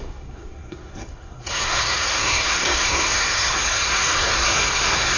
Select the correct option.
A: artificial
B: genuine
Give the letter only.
A